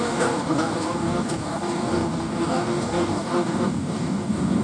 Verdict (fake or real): fake